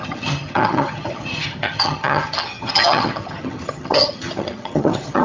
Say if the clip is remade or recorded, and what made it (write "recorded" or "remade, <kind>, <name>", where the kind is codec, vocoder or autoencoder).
remade, vocoder, HiFi-GAN